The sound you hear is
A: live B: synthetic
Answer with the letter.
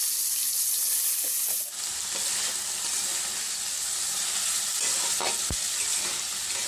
A